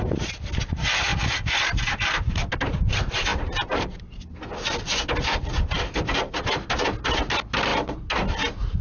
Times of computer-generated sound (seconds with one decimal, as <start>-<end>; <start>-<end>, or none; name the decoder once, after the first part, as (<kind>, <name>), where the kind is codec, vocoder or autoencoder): 3.3-4.0 (vocoder, BigVGAN v2)